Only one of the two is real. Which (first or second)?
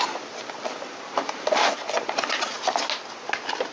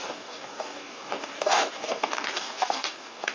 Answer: first